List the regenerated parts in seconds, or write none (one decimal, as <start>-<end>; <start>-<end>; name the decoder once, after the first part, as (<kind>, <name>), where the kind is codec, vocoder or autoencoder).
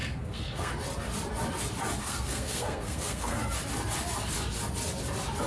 0.0-0.7 (codec, SNAC); 2.0-3.4